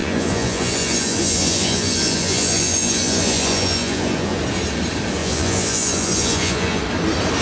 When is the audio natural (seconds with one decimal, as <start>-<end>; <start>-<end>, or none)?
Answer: 4.4-5.2; 6.8-7.4